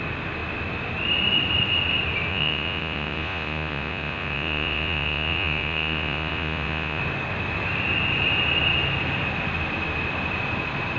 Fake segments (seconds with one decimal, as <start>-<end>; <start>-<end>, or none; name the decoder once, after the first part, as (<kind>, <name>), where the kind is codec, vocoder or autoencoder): 2.3-7.0 (vocoder, Vocos)